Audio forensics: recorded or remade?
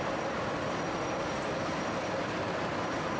remade